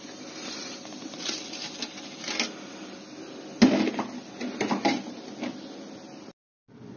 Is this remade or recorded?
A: recorded